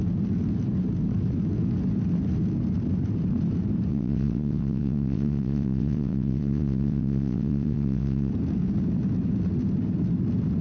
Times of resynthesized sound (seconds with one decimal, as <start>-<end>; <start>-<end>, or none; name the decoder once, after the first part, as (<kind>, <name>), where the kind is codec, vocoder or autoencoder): 3.9-8.3 (vocoder, WaveNeXt)